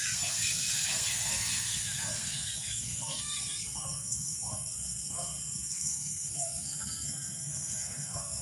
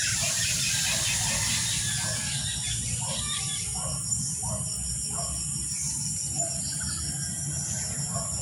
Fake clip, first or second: first